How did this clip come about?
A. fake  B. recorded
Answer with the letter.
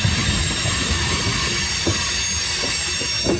B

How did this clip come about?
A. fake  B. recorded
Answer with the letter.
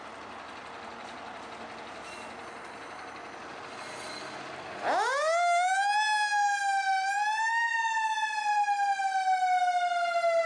B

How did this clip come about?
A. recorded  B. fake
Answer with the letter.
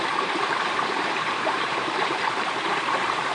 B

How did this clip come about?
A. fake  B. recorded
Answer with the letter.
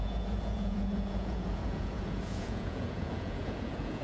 A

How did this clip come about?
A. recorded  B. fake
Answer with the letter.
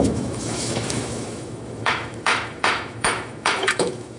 B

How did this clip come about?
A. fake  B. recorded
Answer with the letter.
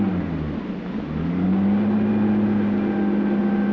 B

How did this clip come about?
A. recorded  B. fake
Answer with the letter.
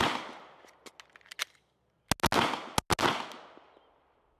A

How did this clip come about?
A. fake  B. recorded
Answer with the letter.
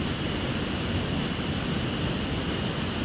B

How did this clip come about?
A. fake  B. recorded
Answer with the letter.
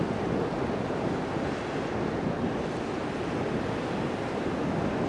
B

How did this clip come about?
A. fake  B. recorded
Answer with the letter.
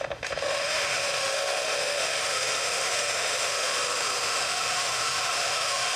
A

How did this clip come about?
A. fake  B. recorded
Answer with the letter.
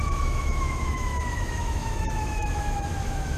A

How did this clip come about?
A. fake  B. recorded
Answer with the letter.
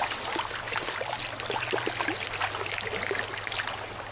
B